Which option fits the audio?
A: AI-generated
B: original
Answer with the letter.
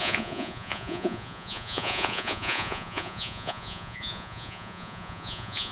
A